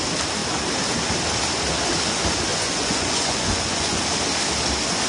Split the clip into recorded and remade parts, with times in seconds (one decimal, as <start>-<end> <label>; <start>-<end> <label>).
0.0-2.5 recorded; 2.5-4.0 remade; 4.0-5.1 recorded